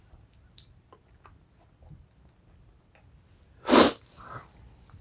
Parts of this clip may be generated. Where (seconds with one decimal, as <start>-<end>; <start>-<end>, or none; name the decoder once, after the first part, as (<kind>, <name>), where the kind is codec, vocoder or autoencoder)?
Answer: none